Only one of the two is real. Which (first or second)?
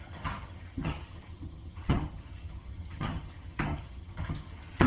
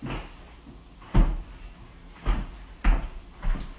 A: second